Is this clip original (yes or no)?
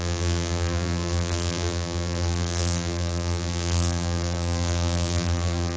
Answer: no